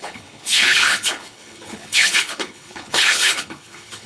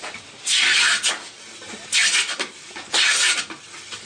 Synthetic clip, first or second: first